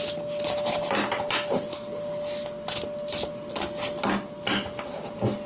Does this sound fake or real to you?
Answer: real